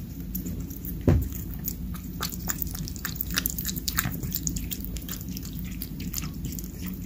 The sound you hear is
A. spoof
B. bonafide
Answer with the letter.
A